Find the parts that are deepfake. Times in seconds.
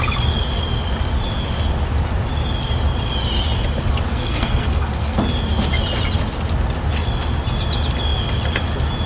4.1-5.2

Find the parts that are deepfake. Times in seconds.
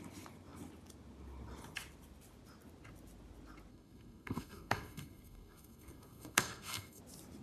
3.7-7.0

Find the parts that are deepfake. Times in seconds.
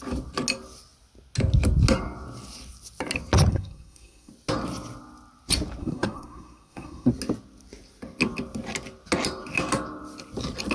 3.5-4.3; 5.8-7.1